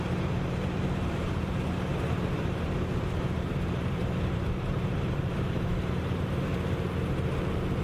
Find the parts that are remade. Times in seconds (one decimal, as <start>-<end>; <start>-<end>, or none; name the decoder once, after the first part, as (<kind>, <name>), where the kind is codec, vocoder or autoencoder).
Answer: 0.0-6.5 (vocoder, BigVGAN v2)